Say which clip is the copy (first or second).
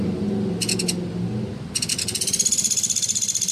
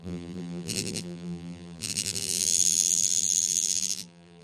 second